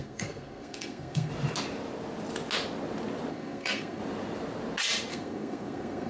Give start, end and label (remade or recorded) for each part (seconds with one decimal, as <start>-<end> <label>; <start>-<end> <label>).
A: 0.0-1.3 remade; 1.3-3.3 recorded; 3.3-4.0 remade; 4.0-5.1 recorded; 5.1-6.1 remade